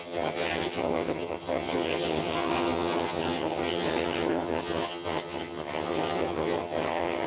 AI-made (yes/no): yes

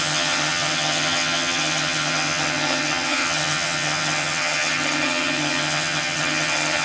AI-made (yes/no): yes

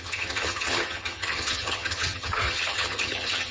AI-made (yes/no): yes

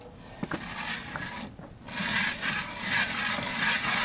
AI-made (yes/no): no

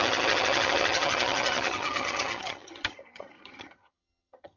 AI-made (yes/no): yes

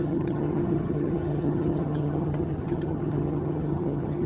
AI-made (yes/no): yes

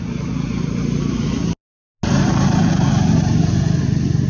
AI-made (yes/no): no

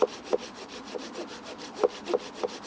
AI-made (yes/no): no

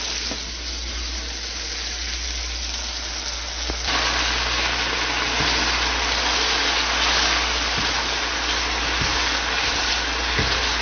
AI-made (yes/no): no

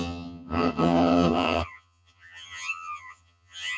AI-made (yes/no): yes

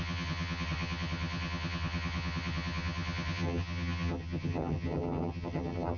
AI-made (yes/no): yes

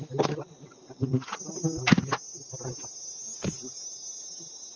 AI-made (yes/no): no